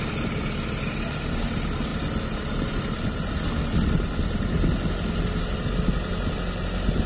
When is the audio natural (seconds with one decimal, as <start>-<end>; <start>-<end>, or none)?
0.0-7.1